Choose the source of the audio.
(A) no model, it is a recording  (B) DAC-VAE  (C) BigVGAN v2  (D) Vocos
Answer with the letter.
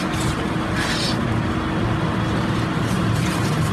A